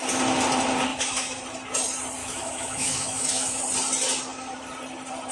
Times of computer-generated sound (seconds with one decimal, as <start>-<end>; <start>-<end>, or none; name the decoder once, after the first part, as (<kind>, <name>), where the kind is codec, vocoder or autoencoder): 0.9-1.4 (autoencoder, DAC-VAE); 2.2-3.6